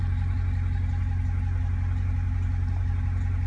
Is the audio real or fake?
real